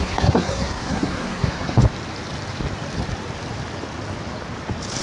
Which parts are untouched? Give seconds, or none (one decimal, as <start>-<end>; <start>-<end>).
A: 1.8-5.0